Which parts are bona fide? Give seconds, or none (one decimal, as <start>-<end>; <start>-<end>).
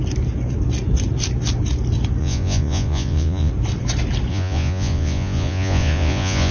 0.0-2.2; 3.5-4.3